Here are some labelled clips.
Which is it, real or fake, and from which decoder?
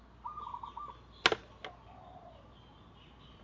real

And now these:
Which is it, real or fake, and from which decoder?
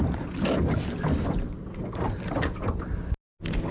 real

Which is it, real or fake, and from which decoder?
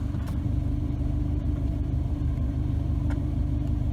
fake, vocoder, BigVGAN v2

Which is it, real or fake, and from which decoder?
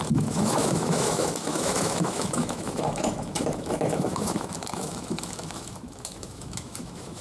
fake, autoencoder, DAC-VAE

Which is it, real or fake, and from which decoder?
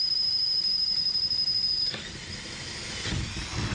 real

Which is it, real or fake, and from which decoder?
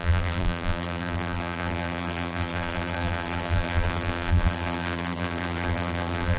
fake, vocoder, BigVGAN v2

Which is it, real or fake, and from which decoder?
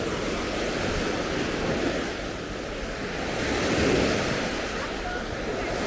real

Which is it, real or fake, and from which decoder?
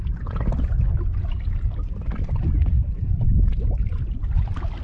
real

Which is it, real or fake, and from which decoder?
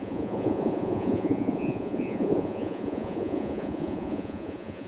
fake, vocoder, Vocos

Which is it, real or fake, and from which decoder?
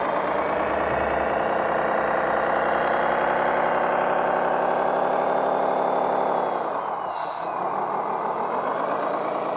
real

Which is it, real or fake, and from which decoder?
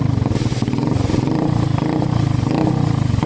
real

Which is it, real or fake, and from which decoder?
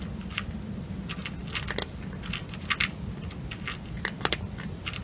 real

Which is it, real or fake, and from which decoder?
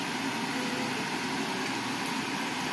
real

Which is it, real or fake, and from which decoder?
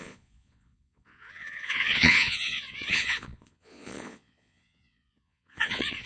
fake, vocoder, Vocos